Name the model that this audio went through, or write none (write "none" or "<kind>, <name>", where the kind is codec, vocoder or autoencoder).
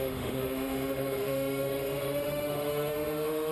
autoencoder, DAC-VAE